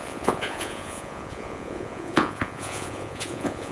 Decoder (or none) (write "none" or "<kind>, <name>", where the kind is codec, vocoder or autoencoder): vocoder, Vocos